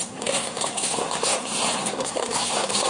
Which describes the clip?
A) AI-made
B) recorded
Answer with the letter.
A